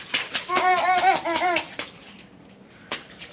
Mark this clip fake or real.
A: real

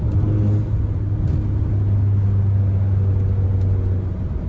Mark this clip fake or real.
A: real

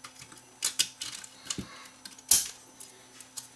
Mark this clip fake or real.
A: real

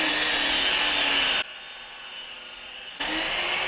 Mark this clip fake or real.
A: real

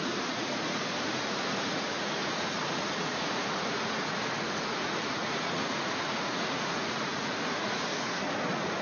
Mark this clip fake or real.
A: fake